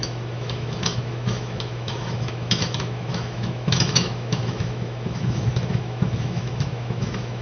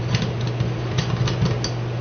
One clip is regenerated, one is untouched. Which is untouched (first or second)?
second